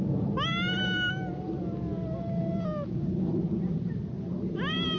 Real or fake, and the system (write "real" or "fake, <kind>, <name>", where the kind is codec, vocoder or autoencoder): real